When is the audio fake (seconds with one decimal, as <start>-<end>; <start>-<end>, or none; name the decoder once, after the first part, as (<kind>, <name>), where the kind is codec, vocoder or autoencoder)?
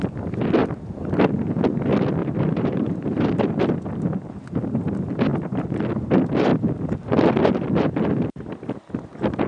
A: 2.2-3.7 (vocoder, BigVGAN v2); 5.3-5.8